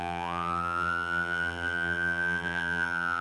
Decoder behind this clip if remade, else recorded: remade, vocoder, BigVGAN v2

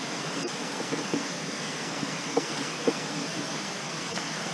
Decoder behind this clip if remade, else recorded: remade, codec, SNAC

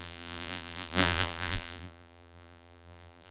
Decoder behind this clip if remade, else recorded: remade, vocoder, BigVGAN v2